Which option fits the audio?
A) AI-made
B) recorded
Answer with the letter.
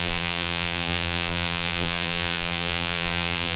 A